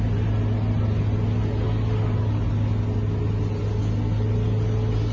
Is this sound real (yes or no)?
yes